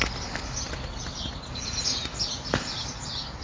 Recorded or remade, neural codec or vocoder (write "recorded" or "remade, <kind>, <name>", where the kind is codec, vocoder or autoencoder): recorded